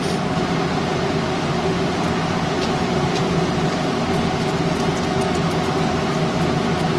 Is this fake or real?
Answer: real